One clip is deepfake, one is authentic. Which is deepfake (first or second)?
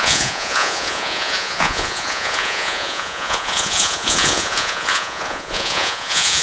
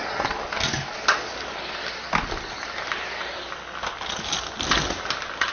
first